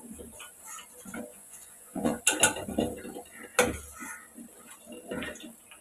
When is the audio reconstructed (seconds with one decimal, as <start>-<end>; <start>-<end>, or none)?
1.3-2.2